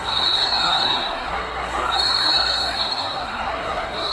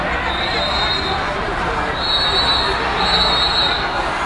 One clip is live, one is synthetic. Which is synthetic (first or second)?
first